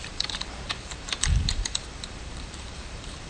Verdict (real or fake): fake